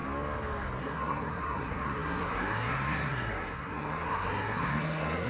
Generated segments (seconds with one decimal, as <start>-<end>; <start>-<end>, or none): 0.8-5.3